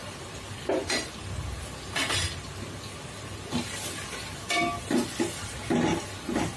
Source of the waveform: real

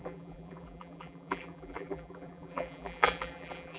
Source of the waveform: fake